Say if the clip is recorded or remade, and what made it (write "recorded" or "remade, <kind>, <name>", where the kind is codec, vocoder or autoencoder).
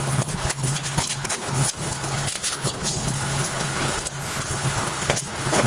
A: remade, codec, HILCodec